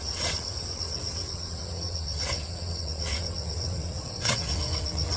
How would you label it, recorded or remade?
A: remade